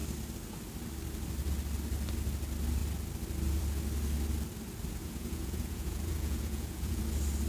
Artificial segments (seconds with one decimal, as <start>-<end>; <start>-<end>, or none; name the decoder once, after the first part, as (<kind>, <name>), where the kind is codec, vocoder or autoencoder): 5.0-7.0 (vocoder, Vocos)